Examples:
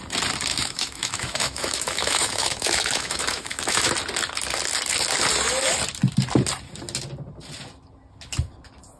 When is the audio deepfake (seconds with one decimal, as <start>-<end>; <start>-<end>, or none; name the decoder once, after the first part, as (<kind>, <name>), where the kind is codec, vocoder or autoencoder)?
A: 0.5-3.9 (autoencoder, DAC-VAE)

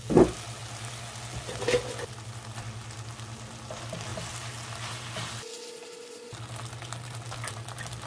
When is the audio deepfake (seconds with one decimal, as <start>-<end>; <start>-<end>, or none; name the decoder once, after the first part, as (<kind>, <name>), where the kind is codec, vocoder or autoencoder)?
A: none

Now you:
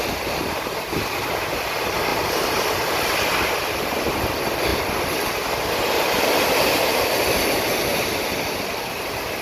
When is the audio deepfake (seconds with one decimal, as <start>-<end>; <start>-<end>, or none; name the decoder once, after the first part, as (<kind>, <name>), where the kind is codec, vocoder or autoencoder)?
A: 2.1-2.9 (vocoder, BigVGAN v2)